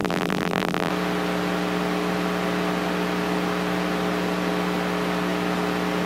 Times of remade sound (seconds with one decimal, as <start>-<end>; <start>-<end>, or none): 0.0-0.9